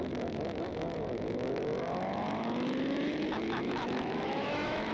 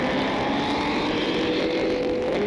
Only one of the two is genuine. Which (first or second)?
second